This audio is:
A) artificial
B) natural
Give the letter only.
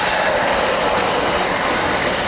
B